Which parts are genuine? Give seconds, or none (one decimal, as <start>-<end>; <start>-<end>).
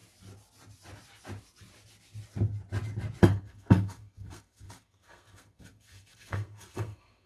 0.0-3.2